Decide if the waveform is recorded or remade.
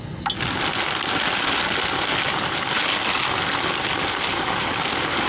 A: recorded